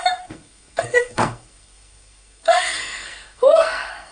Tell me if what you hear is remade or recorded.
remade